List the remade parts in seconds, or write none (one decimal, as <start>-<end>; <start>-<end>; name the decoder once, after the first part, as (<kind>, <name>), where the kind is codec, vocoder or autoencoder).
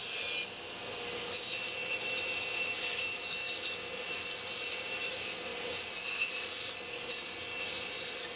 none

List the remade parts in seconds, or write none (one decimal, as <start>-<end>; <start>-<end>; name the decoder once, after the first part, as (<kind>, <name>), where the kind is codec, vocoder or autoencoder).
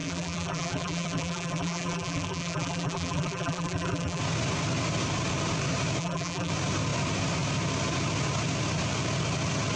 0.0-4.2 (vocoder, BigVGAN v2); 6.0-6.5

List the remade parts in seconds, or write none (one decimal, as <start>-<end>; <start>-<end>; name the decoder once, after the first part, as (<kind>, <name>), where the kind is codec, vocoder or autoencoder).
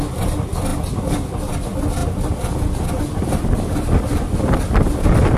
2.0-4.0 (vocoder, BigVGAN v2)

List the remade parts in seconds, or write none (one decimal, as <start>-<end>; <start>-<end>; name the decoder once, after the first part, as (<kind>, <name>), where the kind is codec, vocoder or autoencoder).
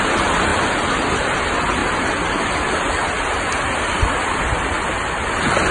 0.5-1.4 (vocoder, BigVGAN v2); 1.8-2.7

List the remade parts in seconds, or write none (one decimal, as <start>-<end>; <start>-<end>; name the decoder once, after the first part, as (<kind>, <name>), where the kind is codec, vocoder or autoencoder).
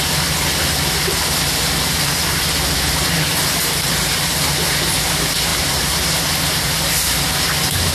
3.3-3.9 (vocoder, BigVGAN v2)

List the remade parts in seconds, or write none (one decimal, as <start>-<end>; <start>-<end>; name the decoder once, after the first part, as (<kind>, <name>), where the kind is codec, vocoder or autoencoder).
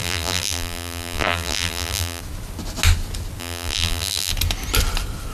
0.0-2.2 (vocoder, BigVGAN v2); 3.4-4.3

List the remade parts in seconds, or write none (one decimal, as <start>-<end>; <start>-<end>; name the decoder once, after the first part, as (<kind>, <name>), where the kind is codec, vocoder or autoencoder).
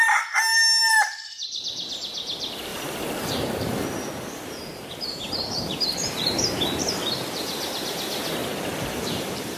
2.7-6.4 (vocoder, BigVGAN v2); 8.4-9.6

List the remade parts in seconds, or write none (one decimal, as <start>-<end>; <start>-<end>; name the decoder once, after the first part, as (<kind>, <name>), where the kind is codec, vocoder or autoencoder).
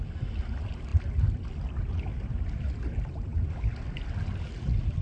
none